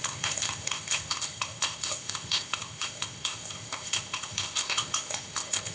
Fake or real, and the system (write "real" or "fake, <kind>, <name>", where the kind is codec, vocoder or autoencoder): fake, codec, ZipCodec